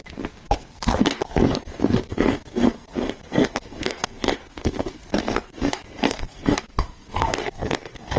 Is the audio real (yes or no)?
no